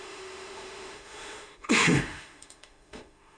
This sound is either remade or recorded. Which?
remade